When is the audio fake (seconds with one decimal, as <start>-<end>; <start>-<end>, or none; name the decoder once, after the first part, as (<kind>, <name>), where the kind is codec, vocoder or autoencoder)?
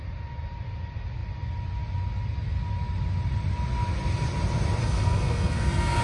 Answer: 4.8-6.0 (codec, SNAC)